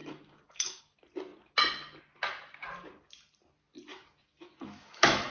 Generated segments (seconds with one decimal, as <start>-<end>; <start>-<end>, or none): 0.0-0.8; 3.9-5.3

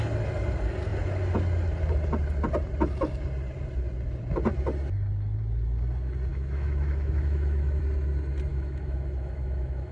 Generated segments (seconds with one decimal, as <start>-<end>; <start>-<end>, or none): 6.3-7.8; 8.5-9.9